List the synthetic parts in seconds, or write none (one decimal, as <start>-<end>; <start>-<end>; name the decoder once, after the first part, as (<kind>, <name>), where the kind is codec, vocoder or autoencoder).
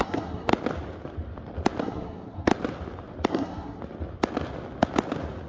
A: 0.0-0.5 (codec, SNAC); 1.8-2.5; 3.3-3.8